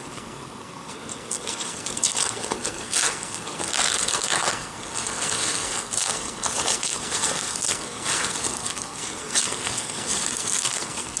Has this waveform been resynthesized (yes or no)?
yes